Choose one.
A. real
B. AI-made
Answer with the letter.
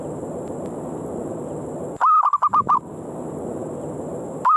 A